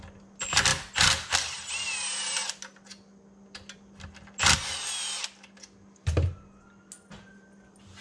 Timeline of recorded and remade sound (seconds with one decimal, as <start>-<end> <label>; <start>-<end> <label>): 0.0-8.0 recorded